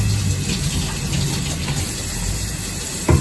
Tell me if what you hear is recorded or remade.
recorded